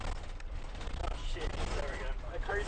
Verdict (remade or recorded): recorded